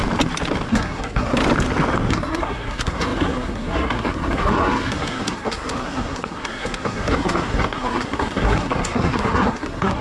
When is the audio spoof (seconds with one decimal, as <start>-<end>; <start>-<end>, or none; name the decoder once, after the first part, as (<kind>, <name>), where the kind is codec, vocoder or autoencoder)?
0.7-1.4 (codec, SNAC); 2.1-10.0